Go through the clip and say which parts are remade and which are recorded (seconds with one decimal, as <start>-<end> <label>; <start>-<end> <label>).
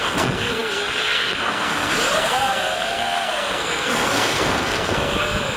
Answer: 0.0-5.6 remade